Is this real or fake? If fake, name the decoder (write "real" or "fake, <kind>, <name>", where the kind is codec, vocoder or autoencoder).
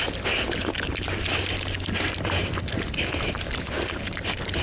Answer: real